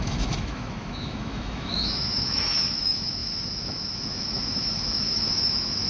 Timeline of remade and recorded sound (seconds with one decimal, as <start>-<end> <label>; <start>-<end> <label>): 0.0-5.9 remade